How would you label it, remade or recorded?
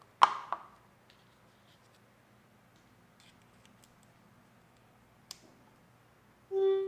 recorded